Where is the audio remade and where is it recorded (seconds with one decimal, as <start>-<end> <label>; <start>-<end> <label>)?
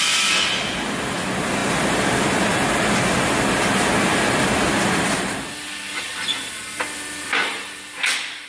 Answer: 0.0-8.5 recorded